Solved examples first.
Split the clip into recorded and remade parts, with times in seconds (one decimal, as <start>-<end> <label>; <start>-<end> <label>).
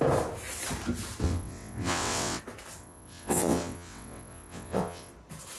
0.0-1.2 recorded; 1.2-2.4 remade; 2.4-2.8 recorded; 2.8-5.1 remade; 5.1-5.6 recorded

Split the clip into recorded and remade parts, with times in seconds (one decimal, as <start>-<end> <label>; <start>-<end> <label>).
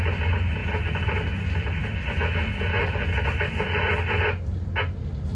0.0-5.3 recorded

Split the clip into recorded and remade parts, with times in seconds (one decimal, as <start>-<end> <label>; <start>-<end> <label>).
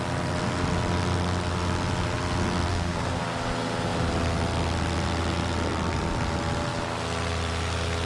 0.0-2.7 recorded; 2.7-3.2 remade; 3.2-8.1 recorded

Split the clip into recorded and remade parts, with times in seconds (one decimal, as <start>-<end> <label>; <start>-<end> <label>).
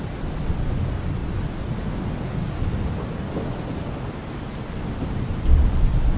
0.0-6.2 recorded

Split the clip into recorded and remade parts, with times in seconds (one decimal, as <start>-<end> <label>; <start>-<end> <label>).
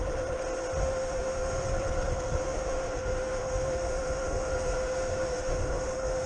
0.0-0.8 recorded; 0.8-1.6 remade; 1.6-2.4 recorded; 2.4-6.3 remade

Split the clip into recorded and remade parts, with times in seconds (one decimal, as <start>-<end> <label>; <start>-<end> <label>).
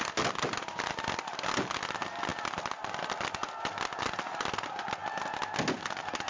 0.0-6.3 recorded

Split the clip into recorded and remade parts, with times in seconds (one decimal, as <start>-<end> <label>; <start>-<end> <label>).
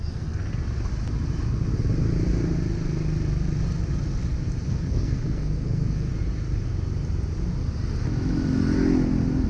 0.0-0.5 remade; 0.5-4.7 recorded; 4.7-6.1 remade; 6.1-9.5 recorded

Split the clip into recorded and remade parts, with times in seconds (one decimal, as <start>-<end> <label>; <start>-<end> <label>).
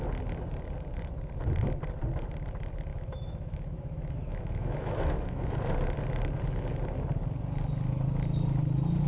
0.0-2.9 recorded; 2.9-5.5 remade; 5.5-9.1 recorded